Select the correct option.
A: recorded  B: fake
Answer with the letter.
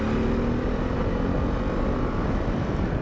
A